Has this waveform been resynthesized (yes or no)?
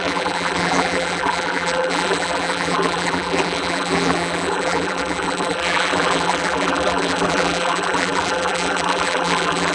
yes